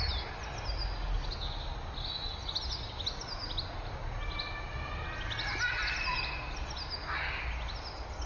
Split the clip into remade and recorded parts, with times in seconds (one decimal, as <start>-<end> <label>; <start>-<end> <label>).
0.0-8.3 recorded